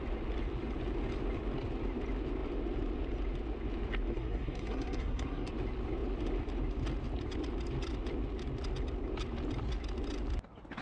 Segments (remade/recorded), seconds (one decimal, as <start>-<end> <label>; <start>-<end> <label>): 0.0-4.1 recorded; 4.1-5.5 remade; 5.5-10.8 recorded